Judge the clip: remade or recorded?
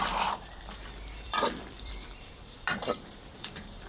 remade